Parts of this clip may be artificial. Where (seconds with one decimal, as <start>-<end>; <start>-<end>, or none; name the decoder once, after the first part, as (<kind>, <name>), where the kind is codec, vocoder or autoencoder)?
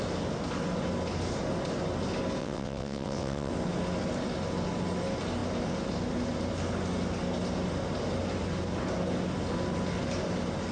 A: 2.4-3.5 (vocoder, WaveNeXt)